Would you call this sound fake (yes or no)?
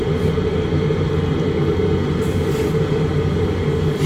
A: no